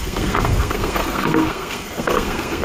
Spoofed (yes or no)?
yes